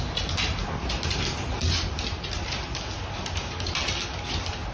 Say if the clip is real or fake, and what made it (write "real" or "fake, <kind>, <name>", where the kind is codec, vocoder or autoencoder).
real